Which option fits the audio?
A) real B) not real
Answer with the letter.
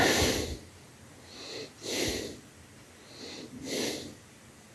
A